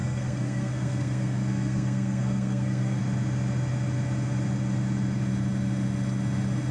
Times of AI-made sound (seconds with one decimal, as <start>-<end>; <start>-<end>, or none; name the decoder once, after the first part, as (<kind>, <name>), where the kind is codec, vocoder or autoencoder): 0.0-3.0 (codec, SNAC)